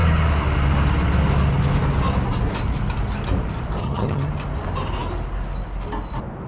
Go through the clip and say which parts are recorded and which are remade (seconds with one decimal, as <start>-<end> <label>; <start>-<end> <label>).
0.0-3.8 recorded; 3.8-4.3 remade; 4.3-6.5 recorded